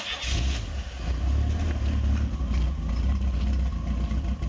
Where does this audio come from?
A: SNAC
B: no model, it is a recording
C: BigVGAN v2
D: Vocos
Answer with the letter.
B